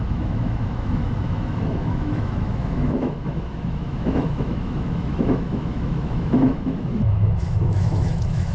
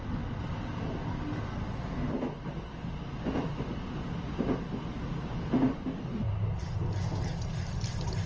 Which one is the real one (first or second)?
second